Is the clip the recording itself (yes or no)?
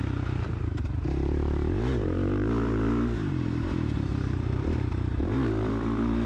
no